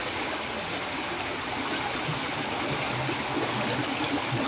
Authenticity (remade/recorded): recorded